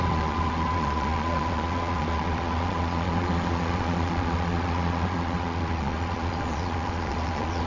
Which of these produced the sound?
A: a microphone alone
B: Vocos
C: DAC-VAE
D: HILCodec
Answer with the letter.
B